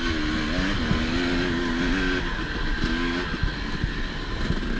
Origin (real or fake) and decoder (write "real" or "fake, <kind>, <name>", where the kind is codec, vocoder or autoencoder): real